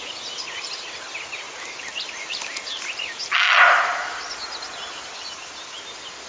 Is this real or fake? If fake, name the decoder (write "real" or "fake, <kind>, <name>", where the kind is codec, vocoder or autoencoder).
real